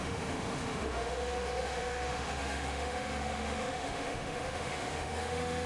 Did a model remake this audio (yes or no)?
yes